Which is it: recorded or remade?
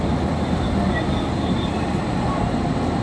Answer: recorded